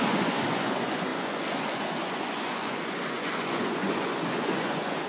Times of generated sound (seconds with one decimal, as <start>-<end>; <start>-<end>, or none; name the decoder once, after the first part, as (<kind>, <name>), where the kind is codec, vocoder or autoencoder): 0.0-5.1 (vocoder, Vocos)